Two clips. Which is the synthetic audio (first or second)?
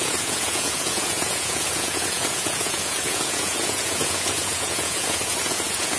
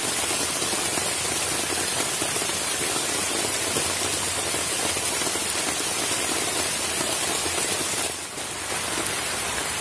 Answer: first